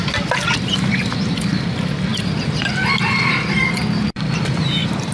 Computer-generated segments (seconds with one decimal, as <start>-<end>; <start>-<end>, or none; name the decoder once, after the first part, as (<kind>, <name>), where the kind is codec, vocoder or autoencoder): none